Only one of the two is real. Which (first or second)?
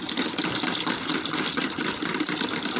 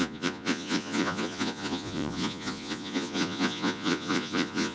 first